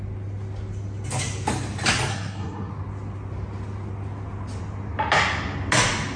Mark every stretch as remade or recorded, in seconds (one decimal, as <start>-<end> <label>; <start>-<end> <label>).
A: 0.0-2.1 recorded; 2.1-2.7 remade; 2.7-6.2 recorded